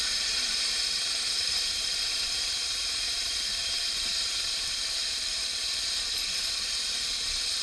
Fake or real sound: fake